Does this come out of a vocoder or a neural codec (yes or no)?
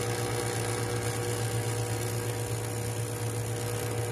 no